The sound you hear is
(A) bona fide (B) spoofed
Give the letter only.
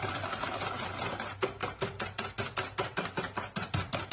A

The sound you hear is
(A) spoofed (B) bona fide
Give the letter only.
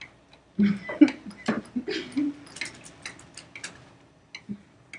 B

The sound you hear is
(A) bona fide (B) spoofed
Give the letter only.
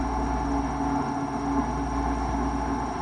A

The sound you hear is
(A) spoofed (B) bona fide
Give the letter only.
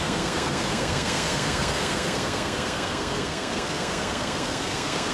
A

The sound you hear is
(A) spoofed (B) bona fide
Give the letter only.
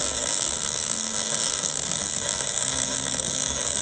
A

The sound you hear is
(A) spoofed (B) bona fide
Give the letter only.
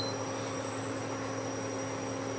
B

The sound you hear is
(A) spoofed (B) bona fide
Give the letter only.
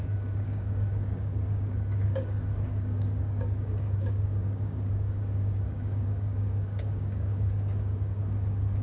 A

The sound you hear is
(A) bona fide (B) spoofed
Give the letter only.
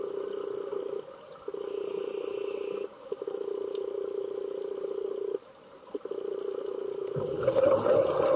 A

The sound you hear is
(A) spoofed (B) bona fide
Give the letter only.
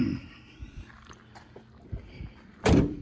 A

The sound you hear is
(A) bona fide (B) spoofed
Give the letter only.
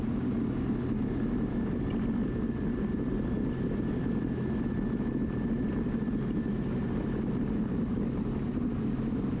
A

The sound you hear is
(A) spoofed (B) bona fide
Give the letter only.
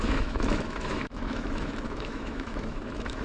A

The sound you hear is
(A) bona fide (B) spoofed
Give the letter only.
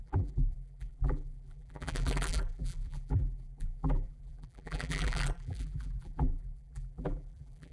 B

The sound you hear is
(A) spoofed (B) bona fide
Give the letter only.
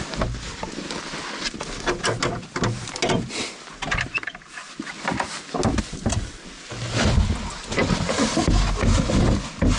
B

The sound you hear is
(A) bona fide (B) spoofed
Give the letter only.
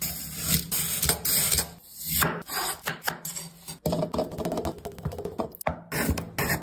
A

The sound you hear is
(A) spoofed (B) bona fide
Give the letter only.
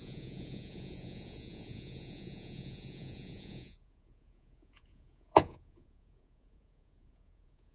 A